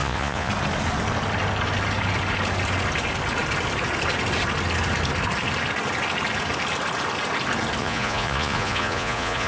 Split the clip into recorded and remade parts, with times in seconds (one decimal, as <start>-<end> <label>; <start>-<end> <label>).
0.0-0.5 remade; 0.5-7.8 recorded; 7.8-9.5 remade